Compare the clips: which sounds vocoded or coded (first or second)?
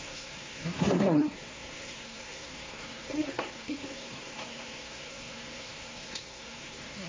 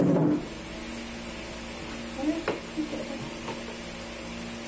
first